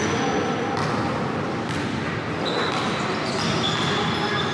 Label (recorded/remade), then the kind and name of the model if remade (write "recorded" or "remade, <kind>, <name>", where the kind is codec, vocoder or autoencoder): recorded